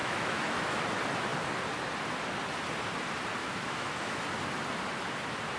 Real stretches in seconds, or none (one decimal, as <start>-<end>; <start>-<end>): 0.8-3.4; 4.2-5.6